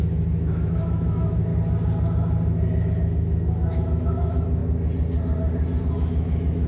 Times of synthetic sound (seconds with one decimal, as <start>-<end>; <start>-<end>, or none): 0.0-1.5; 2.9-4.6; 5.8-6.7